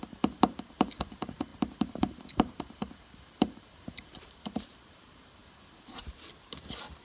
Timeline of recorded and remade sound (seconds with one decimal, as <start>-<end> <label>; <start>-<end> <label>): 0.0-7.0 remade